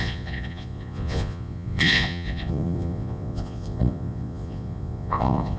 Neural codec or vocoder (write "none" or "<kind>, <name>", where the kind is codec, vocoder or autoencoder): vocoder, Vocos